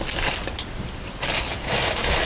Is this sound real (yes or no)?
yes